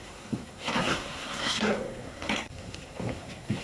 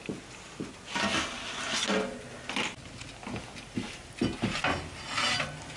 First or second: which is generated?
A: first